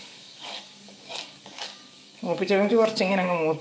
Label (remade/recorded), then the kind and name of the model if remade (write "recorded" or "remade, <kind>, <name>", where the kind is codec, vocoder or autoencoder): remade, codec, DAC